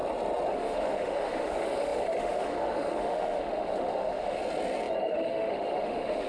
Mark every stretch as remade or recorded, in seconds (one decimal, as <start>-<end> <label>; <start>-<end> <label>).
0.0-0.5 recorded; 0.5-4.4 remade; 4.4-5.0 recorded; 5.0-6.3 remade